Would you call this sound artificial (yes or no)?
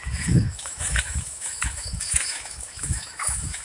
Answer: yes